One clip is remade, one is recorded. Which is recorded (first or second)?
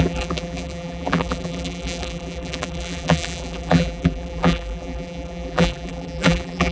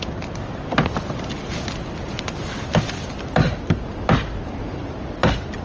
second